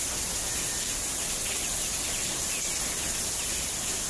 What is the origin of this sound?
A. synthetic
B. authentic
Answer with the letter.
B